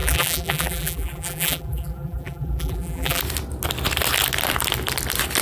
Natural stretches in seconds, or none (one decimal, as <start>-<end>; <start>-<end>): 3.2-5.4